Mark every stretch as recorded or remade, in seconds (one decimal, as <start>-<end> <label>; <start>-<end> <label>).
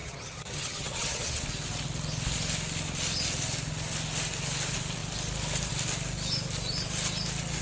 0.0-1.4 remade; 1.4-7.6 recorded